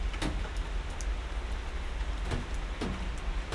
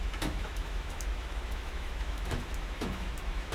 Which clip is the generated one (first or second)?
second